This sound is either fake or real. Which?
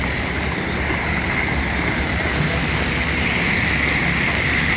real